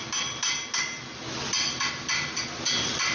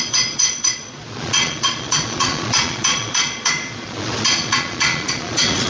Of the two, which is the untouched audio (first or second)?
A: first